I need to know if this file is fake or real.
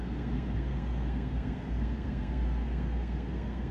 fake